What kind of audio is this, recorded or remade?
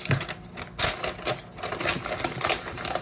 recorded